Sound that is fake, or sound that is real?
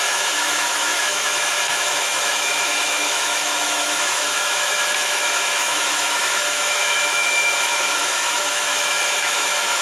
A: fake